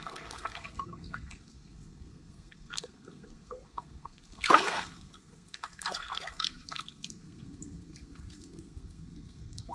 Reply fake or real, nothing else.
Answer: fake